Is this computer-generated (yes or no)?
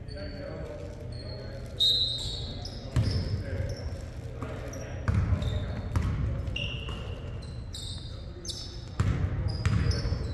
no